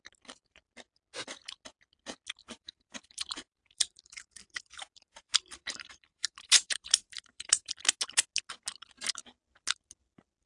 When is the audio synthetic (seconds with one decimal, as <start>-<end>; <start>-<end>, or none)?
2.4-7.7